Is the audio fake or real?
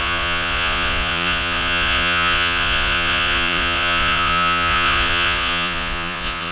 fake